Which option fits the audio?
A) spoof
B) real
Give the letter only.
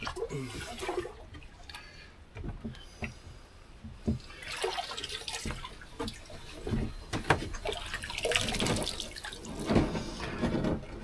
B